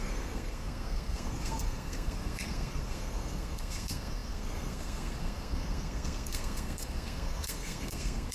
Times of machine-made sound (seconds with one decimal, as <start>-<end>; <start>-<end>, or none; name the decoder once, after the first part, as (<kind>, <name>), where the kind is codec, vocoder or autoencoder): 0.0-8.3 (codec, SNAC)